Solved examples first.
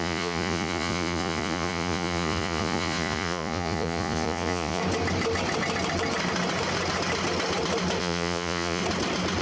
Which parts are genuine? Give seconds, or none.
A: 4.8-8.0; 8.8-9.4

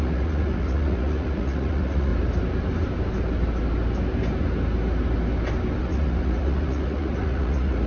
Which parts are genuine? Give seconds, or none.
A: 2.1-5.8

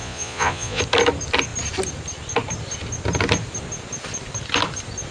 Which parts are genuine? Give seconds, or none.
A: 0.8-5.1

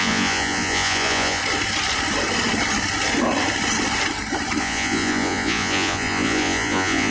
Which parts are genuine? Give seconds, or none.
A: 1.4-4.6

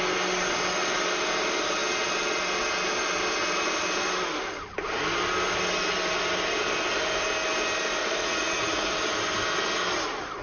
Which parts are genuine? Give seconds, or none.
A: 0.0-8.0; 8.9-10.4

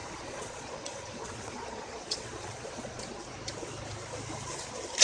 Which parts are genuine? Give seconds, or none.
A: 3.0-5.0

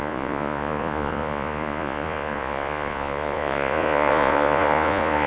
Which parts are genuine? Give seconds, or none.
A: none